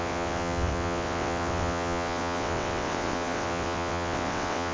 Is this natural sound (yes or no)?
no